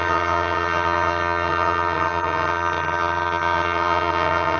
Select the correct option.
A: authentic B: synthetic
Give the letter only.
B